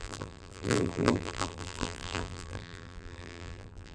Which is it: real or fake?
fake